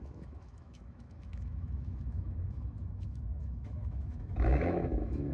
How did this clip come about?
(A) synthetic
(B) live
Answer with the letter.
A